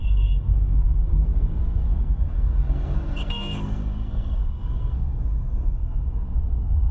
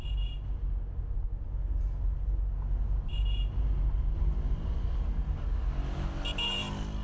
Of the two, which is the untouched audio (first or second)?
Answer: second